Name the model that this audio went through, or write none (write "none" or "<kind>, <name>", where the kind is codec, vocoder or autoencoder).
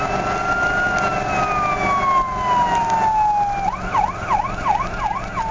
none